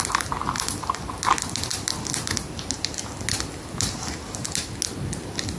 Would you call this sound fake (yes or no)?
no